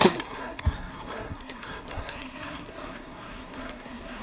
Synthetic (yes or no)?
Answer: yes